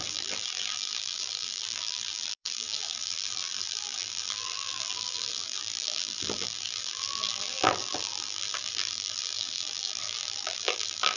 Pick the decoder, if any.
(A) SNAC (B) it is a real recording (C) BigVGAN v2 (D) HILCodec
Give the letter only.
C